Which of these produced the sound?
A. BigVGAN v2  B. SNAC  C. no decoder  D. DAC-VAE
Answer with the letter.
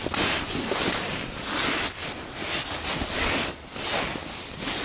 C